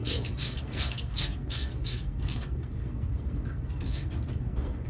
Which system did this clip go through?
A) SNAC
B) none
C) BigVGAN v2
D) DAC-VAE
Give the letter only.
A